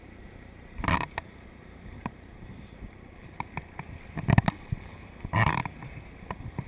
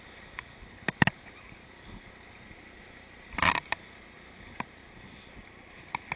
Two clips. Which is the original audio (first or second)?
second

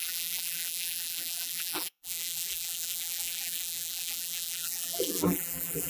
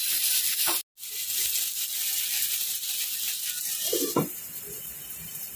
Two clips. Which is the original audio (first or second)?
second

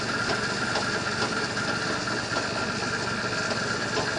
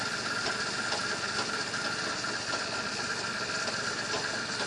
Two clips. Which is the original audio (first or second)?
first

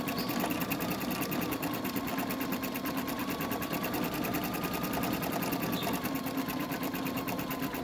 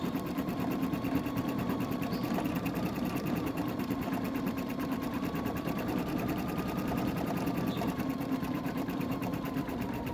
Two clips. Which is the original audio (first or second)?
first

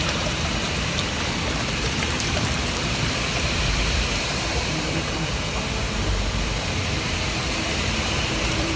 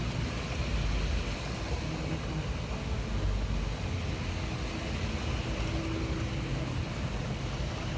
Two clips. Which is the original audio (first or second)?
second